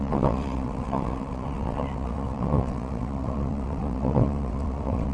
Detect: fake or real fake